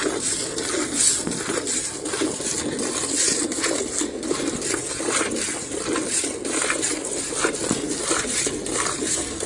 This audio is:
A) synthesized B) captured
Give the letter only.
B